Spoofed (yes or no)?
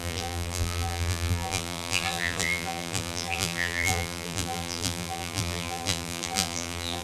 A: yes